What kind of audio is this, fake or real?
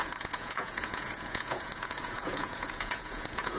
fake